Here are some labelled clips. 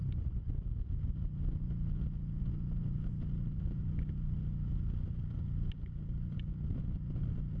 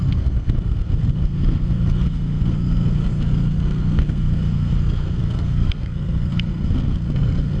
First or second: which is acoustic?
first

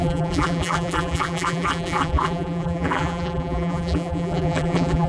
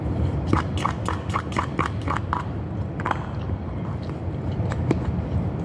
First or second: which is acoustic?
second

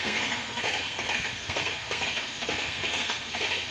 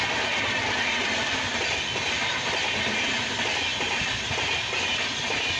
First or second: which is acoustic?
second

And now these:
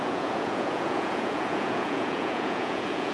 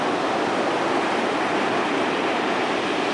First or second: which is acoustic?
second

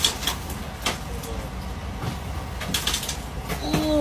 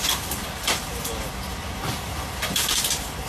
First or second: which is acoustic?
first